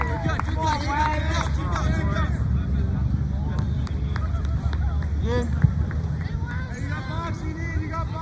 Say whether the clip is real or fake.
fake